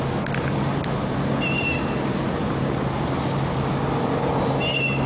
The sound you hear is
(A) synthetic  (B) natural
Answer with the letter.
B